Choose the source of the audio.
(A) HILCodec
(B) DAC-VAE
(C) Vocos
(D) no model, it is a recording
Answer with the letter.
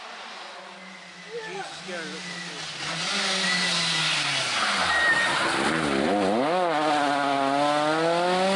D